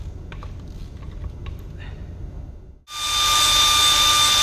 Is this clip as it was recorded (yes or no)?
yes